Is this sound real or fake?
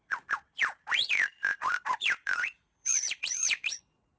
fake